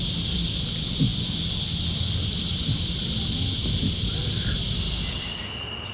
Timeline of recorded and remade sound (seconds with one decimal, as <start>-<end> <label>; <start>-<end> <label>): 0.0-5.9 recorded